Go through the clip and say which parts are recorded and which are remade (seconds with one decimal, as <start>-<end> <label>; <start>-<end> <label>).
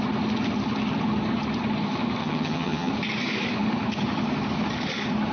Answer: 0.0-2.2 recorded; 2.2-2.9 remade; 2.9-5.3 recorded